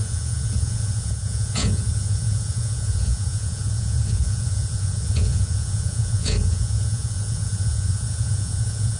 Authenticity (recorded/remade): remade